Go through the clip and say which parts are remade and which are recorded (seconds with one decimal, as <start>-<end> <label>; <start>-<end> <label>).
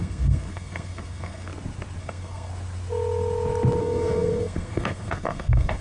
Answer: 0.0-1.5 remade; 1.5-2.0 recorded; 2.0-2.5 remade; 2.5-3.8 recorded; 3.8-5.8 remade